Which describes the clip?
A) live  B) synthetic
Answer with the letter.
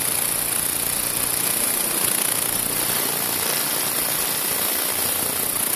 A